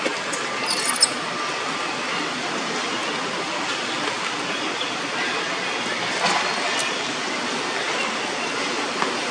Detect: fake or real real